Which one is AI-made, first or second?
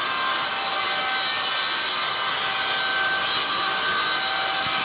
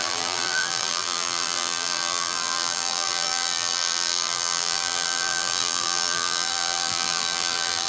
second